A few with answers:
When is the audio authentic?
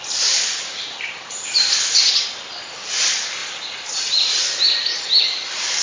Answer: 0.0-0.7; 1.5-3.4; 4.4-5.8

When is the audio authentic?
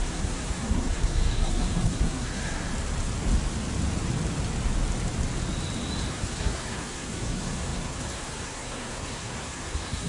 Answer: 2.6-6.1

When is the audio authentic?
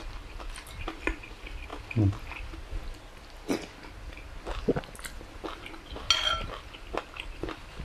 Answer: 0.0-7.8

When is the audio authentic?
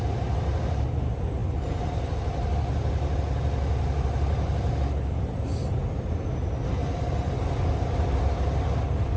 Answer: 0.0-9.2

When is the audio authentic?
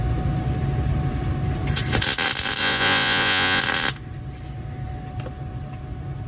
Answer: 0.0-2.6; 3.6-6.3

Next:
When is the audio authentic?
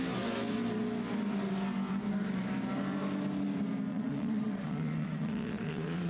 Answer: 0.0-3.9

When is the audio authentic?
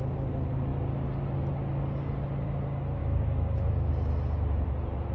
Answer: 0.0-3.0; 3.9-5.1